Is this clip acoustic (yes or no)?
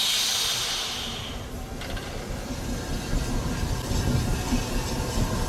yes